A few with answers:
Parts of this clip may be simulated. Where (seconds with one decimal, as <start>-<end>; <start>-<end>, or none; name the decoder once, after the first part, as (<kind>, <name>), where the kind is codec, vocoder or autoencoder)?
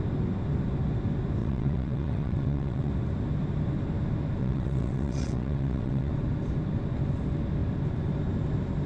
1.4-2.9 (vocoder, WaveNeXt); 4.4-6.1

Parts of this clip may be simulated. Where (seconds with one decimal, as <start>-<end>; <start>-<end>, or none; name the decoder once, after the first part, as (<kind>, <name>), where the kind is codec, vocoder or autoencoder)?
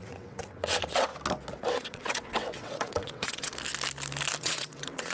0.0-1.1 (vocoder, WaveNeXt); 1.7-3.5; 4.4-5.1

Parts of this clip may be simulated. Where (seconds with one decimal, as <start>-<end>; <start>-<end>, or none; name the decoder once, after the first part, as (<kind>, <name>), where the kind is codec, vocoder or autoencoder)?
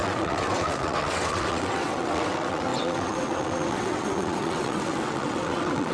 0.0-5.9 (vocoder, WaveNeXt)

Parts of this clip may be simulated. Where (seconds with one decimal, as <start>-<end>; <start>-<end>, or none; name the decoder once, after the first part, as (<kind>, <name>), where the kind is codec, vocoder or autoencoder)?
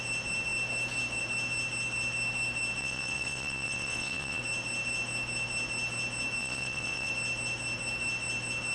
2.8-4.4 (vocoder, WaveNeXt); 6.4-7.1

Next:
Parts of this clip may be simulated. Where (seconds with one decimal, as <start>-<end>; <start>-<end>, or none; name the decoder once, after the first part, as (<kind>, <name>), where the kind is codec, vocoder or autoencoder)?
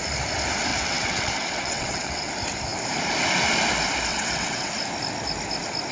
0.7-2.3 (vocoder, WaveNeXt); 4.1-4.7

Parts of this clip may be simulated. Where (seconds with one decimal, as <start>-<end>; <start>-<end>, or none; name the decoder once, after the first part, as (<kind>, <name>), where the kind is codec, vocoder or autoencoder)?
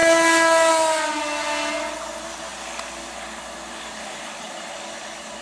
none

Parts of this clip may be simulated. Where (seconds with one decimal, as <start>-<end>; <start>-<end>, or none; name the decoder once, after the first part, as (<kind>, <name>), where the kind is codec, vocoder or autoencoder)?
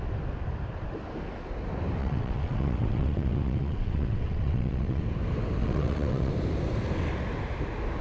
2.0-5.0 (vocoder, WaveNeXt); 5.6-6.3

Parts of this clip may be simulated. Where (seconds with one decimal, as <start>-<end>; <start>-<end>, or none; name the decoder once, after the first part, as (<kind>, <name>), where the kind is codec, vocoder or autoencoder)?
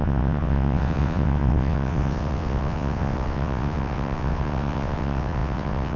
0.0-6.0 (vocoder, WaveNeXt)